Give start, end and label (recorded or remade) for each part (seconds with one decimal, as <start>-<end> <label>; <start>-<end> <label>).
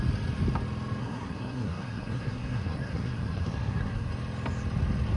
0.0-1.0 recorded; 1.0-4.1 remade; 4.1-5.2 recorded